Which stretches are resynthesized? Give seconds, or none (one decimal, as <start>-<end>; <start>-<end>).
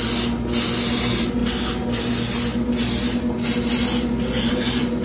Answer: none